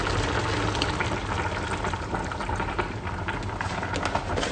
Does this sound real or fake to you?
real